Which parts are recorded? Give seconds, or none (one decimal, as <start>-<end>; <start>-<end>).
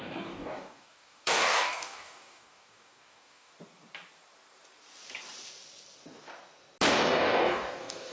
3.5-6.9